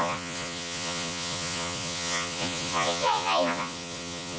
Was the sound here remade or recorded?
remade